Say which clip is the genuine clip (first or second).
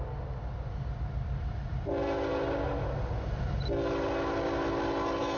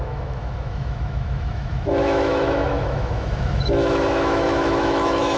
first